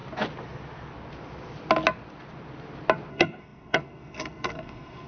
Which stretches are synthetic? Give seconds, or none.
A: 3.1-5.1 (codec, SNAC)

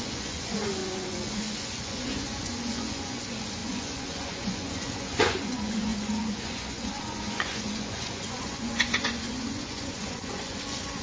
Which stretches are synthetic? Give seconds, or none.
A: 0.0-11.0 (vocoder, Vocos)